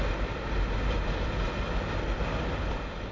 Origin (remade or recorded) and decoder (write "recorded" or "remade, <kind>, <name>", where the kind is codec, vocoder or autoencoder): recorded